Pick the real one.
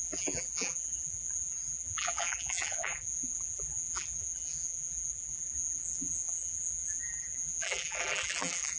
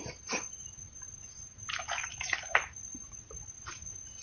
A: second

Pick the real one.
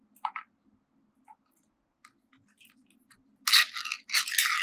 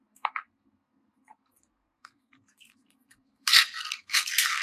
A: first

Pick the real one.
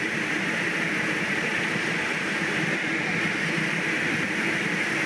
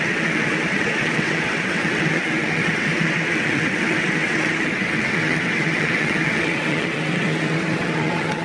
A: first